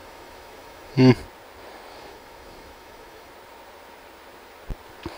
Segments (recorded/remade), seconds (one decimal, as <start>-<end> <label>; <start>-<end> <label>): 0.0-1.1 remade; 1.1-1.9 recorded; 1.9-3.3 remade; 3.3-5.2 recorded